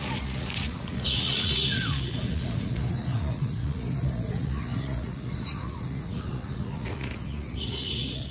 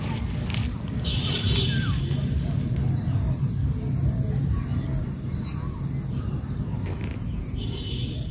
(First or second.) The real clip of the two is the second